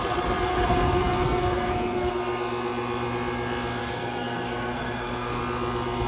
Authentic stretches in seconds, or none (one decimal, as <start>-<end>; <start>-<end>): 0.0-0.5; 2.1-3.8; 5.4-6.1